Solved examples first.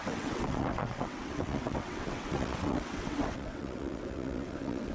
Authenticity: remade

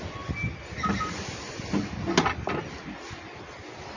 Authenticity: recorded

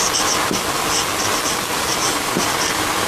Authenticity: recorded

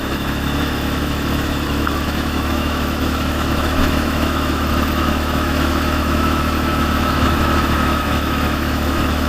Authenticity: remade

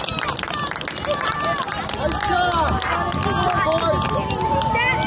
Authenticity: recorded